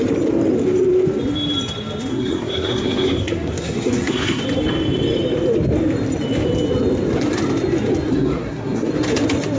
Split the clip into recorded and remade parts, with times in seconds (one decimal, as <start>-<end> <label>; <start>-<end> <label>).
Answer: 0.0-2.1 recorded; 2.1-4.4 remade; 4.4-8.1 recorded; 8.1-8.9 remade; 8.9-9.6 recorded